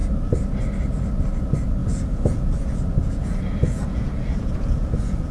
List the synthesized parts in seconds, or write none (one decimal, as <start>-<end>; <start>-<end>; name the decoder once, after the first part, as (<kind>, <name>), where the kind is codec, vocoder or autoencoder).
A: 1.8-5.3 (vocoder, Vocos)